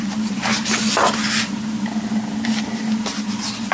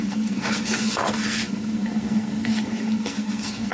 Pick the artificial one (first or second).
second